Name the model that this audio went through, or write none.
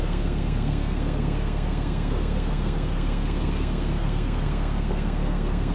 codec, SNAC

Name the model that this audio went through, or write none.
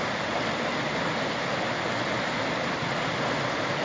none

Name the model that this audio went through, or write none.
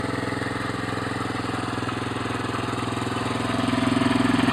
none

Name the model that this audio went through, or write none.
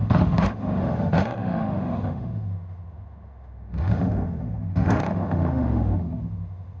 autoencoder, DAC-VAE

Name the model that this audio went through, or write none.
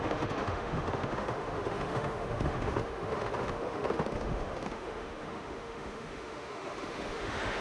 autoencoder, DAC-VAE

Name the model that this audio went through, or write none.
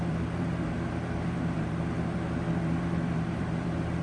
vocoder, BigVGAN v2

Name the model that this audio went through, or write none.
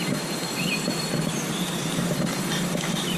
vocoder, BigVGAN v2